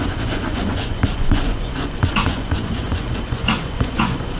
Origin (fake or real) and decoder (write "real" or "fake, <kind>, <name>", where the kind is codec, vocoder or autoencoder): fake, vocoder, Vocos